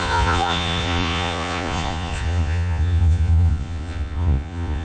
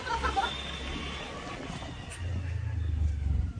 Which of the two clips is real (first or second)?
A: second